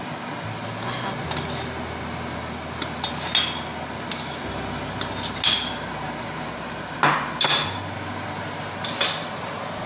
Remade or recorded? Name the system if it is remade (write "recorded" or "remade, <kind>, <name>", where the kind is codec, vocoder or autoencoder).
recorded